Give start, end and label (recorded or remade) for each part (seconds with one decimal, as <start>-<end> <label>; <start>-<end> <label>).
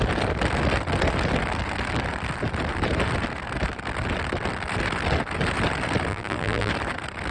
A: 0.0-6.1 recorded; 6.1-6.7 remade; 6.7-7.3 recorded